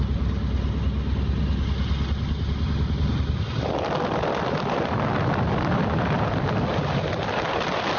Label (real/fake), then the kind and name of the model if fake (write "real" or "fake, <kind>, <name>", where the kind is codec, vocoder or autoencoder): real